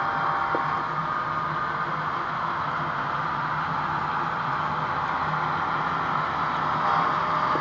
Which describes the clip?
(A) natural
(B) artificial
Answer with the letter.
A